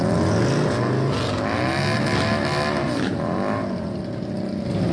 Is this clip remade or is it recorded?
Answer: recorded